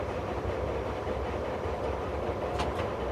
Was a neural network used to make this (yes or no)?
yes